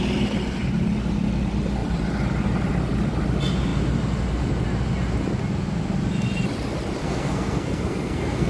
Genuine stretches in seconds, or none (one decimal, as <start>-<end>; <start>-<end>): 0.0-7.0